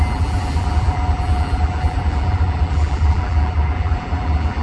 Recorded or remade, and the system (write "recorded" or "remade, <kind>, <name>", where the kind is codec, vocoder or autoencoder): remade, vocoder, BigVGAN v2